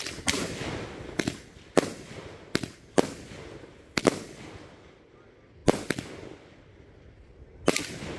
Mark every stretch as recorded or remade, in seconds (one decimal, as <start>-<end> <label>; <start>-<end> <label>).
0.0-8.2 recorded